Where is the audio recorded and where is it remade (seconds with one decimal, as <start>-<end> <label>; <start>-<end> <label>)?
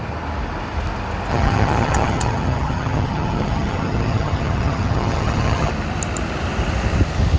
0.0-1.3 recorded; 1.3-5.7 remade; 5.7-7.4 recorded